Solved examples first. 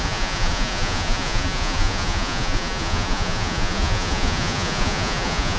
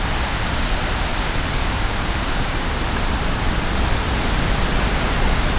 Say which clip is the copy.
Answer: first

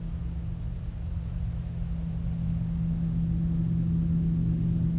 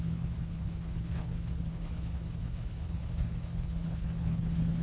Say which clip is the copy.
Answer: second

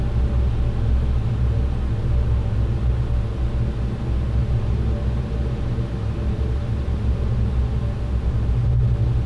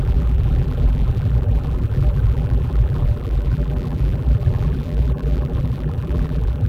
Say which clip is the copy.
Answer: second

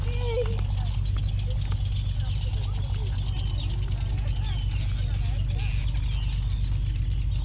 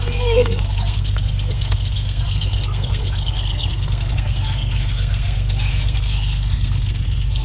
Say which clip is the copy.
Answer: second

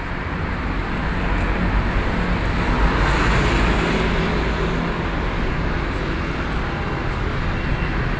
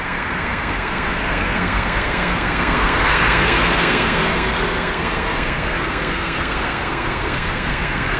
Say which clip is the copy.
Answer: second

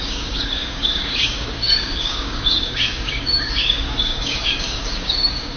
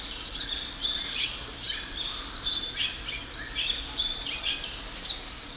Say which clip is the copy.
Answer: first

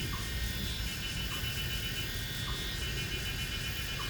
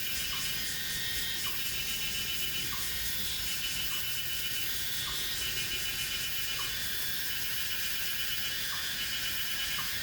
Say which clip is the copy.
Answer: second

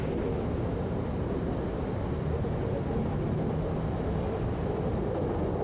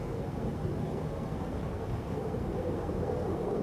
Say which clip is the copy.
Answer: second